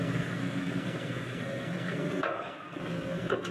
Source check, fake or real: fake